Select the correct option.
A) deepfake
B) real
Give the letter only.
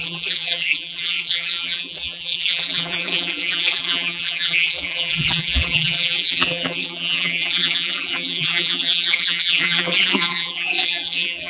A